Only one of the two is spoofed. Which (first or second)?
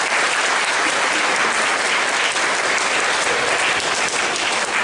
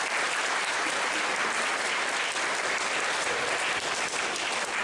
second